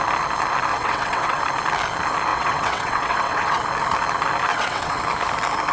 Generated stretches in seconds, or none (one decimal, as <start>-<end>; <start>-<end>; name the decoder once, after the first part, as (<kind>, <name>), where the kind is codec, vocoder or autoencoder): 0.7-1.4 (vocoder, WaveNeXt); 2.3-3.6; 4.5-5.0